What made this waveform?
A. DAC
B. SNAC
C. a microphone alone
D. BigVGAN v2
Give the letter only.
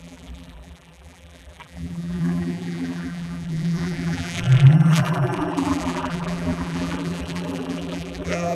D